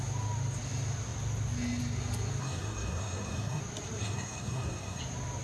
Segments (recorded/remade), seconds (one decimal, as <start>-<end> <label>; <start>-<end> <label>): 0.0-2.4 recorded; 2.4-3.6 remade; 3.6-4.0 recorded; 4.0-5.0 remade; 5.0-5.4 recorded